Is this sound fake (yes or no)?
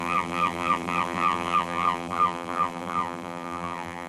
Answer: yes